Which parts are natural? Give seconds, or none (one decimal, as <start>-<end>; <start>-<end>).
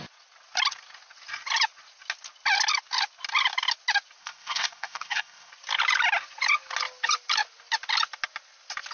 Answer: 0.0-4.2; 5.5-8.9